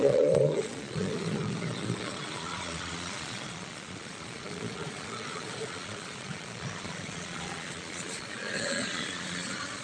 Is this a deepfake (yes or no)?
yes